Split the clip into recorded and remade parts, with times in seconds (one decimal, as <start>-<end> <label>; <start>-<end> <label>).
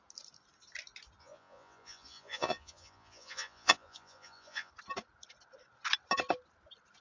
0.0-1.2 recorded; 1.2-4.7 remade; 4.7-7.0 recorded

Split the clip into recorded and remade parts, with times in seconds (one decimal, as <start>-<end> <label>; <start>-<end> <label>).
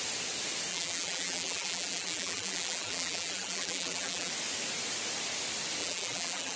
0.0-0.7 recorded; 0.7-4.3 remade; 4.3-5.8 recorded; 5.8-6.6 remade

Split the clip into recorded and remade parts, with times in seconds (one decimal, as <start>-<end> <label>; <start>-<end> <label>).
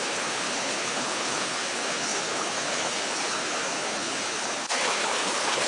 0.0-5.7 remade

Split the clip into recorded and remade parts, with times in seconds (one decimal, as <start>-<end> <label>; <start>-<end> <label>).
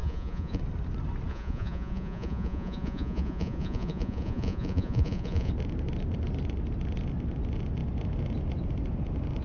0.0-0.6 remade; 0.6-1.3 recorded; 1.3-5.5 remade; 5.5-9.4 recorded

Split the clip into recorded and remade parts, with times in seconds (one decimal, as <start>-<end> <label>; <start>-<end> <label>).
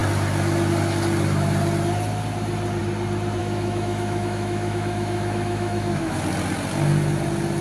0.0-3.4 recorded; 3.4-6.2 remade; 6.2-7.6 recorded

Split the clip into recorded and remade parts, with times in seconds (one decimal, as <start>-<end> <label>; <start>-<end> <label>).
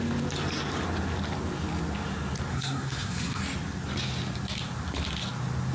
0.0-2.5 recorded; 2.5-3.4 remade; 3.4-5.7 recorded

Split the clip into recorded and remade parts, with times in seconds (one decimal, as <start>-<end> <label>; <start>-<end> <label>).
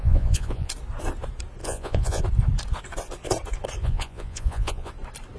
0.0-0.7 remade; 0.7-1.6 recorded; 1.6-2.2 remade; 2.2-3.8 recorded; 3.8-4.9 remade; 4.9-5.4 recorded